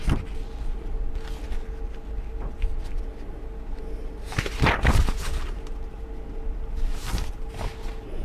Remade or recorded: recorded